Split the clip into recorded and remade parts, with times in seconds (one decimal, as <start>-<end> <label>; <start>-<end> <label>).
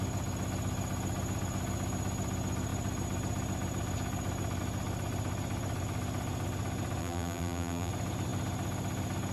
0.0-7.0 recorded; 7.0-7.9 remade; 7.9-9.3 recorded